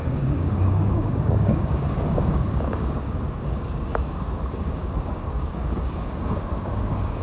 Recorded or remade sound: remade